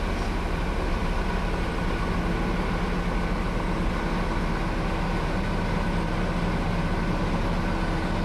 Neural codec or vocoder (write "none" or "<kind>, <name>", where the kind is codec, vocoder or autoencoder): none